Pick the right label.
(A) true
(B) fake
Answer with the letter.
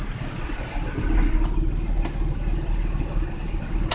A